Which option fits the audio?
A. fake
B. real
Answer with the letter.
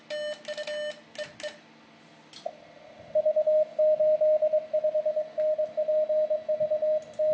B